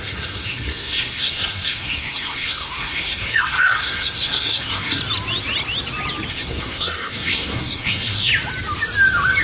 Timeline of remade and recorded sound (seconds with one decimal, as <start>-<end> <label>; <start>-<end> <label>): 0.0-5.0 remade; 5.0-6.3 recorded; 6.3-8.3 remade; 8.3-9.4 recorded